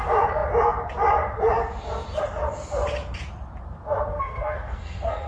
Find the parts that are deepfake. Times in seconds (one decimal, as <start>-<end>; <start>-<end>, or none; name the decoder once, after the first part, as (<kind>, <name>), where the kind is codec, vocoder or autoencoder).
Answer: 4.1-5.3 (codec, SNAC)